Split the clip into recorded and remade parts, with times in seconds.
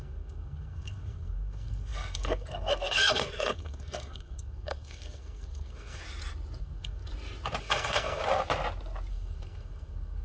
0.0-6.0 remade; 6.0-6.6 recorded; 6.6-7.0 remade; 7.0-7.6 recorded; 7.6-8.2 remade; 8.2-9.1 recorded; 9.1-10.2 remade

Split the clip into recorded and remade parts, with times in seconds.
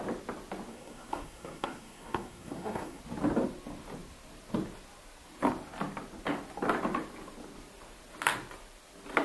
0.0-0.7 recorded; 0.7-3.0 remade; 3.0-9.2 recorded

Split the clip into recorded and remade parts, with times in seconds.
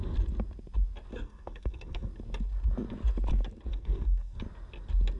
0.0-1.1 recorded; 1.1-2.1 remade; 2.1-3.7 recorded; 3.7-4.4 remade; 4.4-5.2 recorded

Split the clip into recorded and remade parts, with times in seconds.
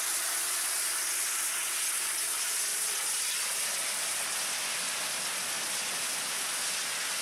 0.0-7.2 recorded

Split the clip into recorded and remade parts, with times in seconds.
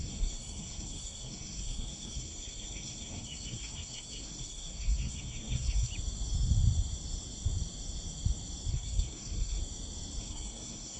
0.0-5.9 remade; 5.9-8.7 recorded; 8.7-9.6 remade; 9.6-10.2 recorded; 10.2-11.0 remade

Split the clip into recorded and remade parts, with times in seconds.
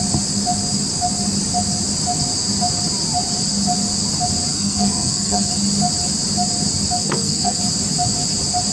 0.0-4.5 recorded; 4.5-5.5 remade; 5.5-7.0 recorded; 7.0-7.6 remade; 7.6-8.7 recorded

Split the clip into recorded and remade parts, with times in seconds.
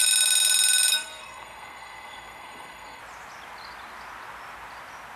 0.0-0.9 recorded; 0.9-3.0 remade; 3.0-5.2 recorded